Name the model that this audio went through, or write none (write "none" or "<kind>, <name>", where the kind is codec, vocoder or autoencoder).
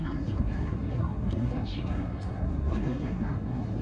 codec, SNAC